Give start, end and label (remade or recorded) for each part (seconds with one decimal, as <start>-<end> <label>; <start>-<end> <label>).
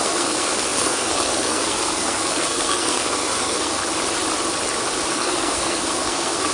0.0-3.8 remade; 3.8-5.1 recorded; 5.1-6.5 remade